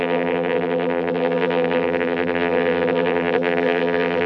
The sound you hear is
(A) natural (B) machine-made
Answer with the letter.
B